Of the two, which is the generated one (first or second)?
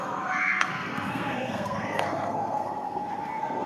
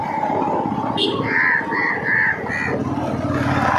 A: first